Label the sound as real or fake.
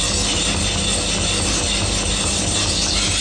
real